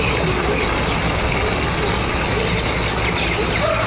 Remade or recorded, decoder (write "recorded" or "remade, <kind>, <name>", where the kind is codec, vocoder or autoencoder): recorded